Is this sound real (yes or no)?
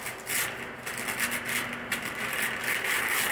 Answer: yes